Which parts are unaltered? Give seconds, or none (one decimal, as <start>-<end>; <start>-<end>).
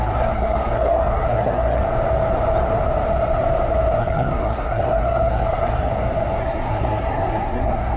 1.8-4.0; 5.9-6.4